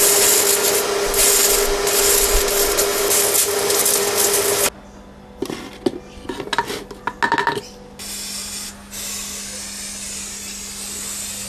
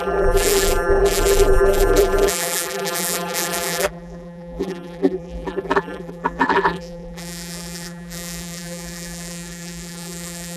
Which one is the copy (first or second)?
second